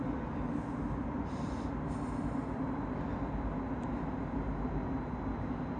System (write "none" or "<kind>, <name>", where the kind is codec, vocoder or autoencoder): none